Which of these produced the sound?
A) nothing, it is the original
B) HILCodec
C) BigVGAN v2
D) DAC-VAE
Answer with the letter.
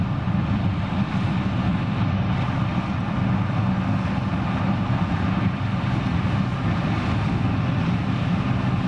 A